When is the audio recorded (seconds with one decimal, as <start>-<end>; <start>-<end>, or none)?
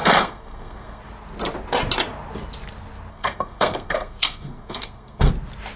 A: 1.0-3.1; 5.3-5.8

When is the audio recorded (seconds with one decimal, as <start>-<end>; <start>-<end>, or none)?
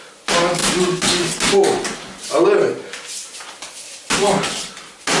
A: 0.0-5.2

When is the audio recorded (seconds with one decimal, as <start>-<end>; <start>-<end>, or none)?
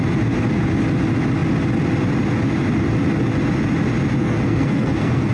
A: 0.0-4.2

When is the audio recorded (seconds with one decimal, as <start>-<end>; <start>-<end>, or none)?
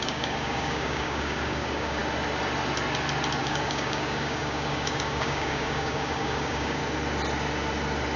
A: 2.0-3.4; 6.8-8.2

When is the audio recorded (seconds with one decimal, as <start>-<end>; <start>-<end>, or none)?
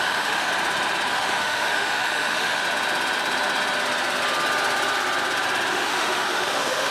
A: 0.5-1.1; 2.6-5.7